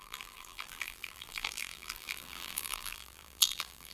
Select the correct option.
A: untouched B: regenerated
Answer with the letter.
B